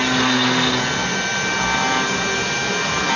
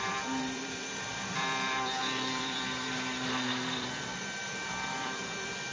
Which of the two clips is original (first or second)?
first